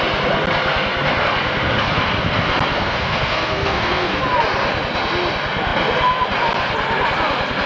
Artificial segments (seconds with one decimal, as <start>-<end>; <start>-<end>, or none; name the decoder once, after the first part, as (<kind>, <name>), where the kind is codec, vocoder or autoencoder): 2.7-4.2 (codec, SNAC)